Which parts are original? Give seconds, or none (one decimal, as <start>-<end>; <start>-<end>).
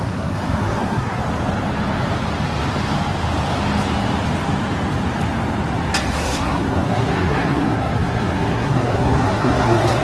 1.2-6.1